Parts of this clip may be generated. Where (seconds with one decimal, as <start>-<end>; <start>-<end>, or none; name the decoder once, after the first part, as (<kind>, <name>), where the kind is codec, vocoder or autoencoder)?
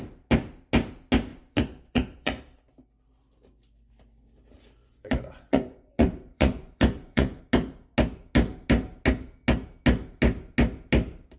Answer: 1.3-2.4 (vocoder, Vocos); 4.8-7.4